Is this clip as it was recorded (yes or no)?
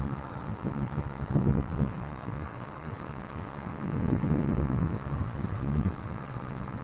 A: no